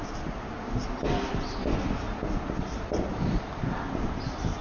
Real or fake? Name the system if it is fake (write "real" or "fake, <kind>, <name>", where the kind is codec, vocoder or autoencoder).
real